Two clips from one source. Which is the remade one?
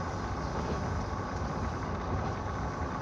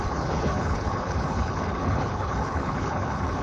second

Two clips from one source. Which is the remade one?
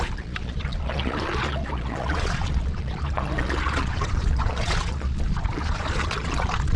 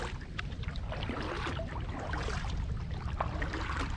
first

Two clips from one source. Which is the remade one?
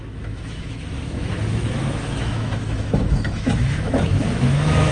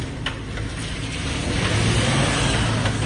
first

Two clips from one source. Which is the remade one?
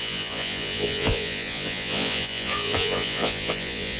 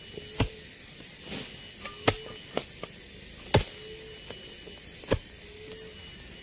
first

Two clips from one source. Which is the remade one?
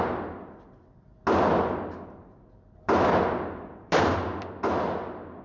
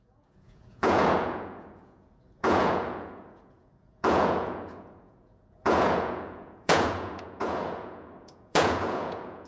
second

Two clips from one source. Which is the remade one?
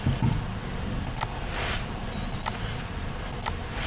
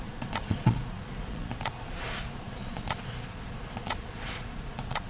second